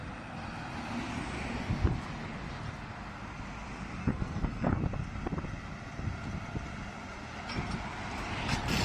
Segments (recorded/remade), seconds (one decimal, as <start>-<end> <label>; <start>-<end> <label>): 0.0-4.0 recorded; 4.0-4.8 remade; 4.8-8.8 recorded